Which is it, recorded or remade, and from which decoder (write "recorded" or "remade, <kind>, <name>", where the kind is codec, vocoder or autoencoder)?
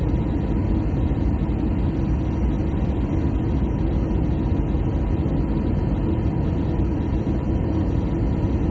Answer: recorded